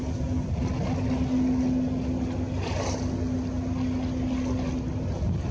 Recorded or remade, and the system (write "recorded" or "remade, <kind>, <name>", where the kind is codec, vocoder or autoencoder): recorded